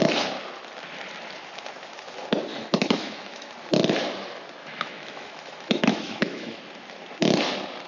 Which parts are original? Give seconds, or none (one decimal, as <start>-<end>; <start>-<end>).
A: 0.0-2.5; 3.5-4.6; 6.6-7.9

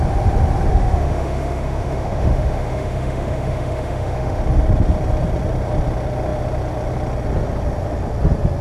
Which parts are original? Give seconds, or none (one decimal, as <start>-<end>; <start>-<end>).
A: 0.0-0.7; 4.4-8.6